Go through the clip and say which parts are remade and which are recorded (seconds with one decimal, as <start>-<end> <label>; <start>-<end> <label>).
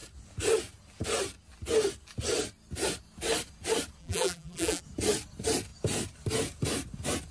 0.0-4.0 recorded; 4.0-4.8 remade; 4.8-7.3 recorded